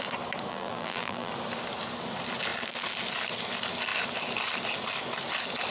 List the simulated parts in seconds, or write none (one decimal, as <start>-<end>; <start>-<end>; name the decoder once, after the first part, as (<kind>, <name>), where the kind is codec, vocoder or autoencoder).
0.5-1.3 (vocoder, BigVGAN v2)